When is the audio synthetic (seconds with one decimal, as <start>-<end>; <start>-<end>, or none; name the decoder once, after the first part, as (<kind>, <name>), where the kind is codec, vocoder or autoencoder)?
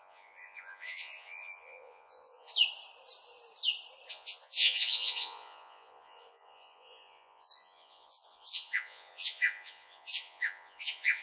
0.0-2.5 (vocoder, Vocos); 4.1-11.2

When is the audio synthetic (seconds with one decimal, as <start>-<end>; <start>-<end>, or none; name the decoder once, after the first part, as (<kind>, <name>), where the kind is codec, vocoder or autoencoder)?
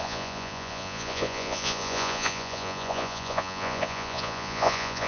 0.0-5.1 (vocoder, Vocos)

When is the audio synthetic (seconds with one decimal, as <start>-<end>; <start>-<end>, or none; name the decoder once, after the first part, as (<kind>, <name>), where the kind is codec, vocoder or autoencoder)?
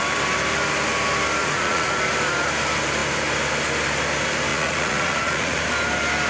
1.4-1.9 (vocoder, Vocos); 4.5-5.6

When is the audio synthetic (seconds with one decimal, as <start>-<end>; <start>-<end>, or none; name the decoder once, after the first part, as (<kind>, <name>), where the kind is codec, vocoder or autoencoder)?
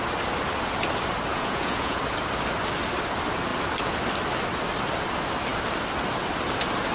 1.3-2.0 (vocoder, Vocos)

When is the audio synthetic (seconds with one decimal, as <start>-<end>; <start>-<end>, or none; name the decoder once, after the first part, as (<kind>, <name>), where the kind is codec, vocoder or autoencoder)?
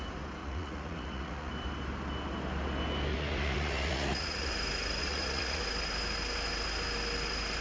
0.4-1.5 (vocoder, Vocos); 3.1-4.5; 5.0-5.6